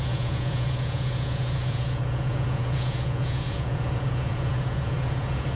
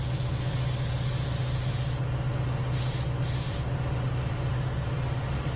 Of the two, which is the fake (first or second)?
first